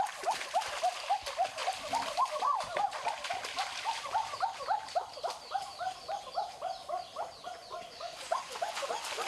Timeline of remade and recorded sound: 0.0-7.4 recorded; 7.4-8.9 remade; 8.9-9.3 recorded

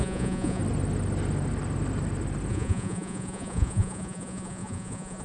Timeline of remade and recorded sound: 0.0-0.6 remade; 0.6-2.5 recorded; 2.5-5.2 remade

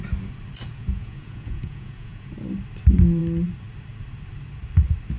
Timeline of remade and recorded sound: 0.0-0.7 recorded; 0.7-2.3 remade; 2.3-5.2 recorded

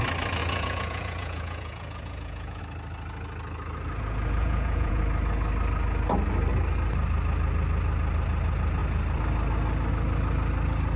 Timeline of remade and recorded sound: 0.0-0.4 recorded; 0.4-2.6 remade; 2.6-4.4 recorded; 4.4-5.0 remade; 5.0-11.0 recorded

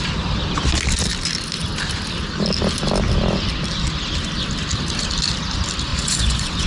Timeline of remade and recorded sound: 0.0-5.9 recorded; 5.9-6.7 remade

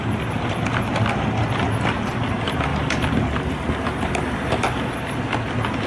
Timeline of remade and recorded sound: 0.0-5.9 recorded

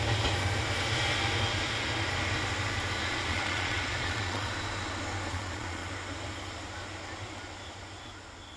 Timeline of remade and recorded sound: 0.0-3.0 recorded; 3.0-4.5 remade; 4.5-5.3 recorded; 5.3-5.9 remade; 5.9-8.6 recorded

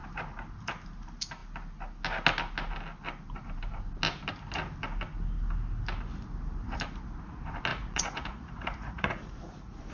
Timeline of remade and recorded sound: 0.0-7.7 recorded; 7.7-9.9 remade